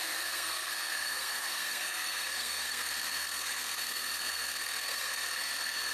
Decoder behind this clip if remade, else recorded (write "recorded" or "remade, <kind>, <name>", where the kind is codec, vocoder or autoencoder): remade, codec, SNAC